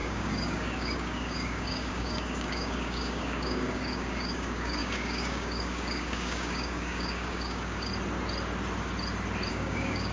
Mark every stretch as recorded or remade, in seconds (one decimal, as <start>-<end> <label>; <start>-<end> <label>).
0.0-7.9 remade; 7.9-9.5 recorded; 9.5-10.1 remade